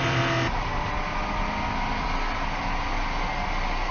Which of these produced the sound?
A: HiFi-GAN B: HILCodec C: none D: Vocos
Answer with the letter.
C